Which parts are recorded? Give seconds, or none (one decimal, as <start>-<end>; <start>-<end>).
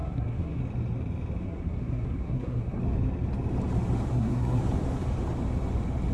0.6-1.4; 2.8-4.1; 4.6-6.1